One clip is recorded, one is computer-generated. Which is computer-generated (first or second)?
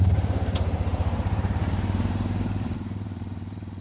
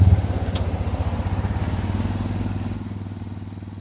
first